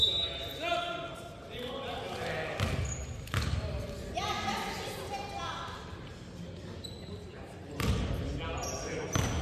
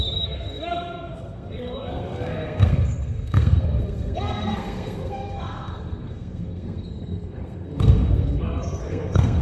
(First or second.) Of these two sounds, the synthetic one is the second